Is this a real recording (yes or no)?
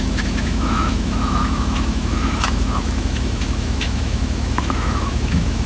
no